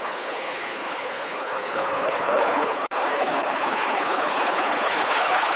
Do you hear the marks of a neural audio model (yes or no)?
yes